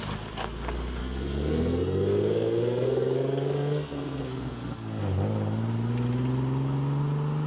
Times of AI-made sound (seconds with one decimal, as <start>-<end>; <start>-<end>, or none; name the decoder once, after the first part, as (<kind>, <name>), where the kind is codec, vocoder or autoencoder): 1.0-5.0 (codec, SNAC)